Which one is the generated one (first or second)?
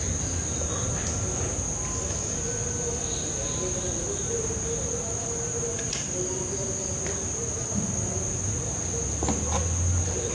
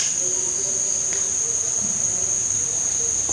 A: second